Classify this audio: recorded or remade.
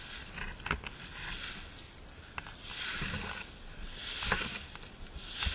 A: recorded